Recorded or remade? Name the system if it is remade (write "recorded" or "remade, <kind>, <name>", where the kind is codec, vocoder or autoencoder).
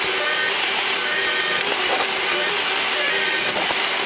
recorded